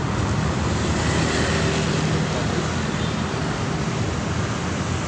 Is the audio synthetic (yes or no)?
no